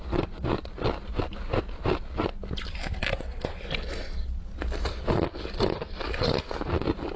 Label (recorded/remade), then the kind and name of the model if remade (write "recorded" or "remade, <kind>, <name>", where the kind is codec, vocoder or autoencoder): recorded